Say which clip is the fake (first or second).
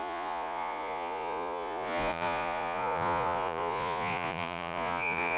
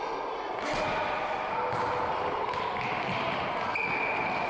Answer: first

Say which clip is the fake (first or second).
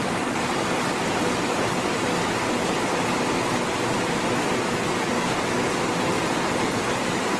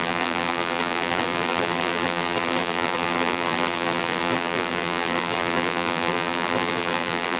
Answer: second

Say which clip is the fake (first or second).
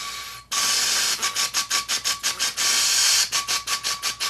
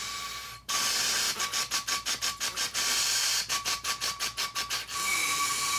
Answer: second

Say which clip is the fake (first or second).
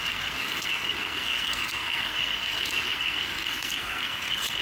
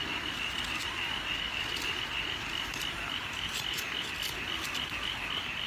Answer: first